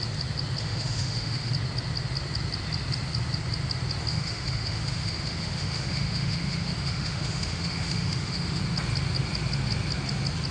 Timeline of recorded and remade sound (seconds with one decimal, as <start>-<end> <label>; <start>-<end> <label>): 0.0-0.6 recorded; 0.6-1.5 remade; 1.5-4.1 recorded; 4.1-8.6 remade; 8.6-10.5 recorded